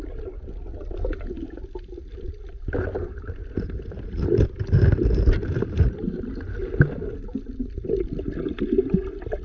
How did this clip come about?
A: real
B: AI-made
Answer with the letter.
A